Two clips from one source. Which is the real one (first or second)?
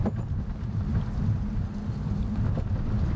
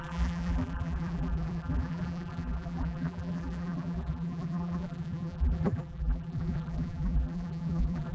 first